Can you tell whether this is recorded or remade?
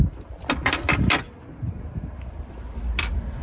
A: recorded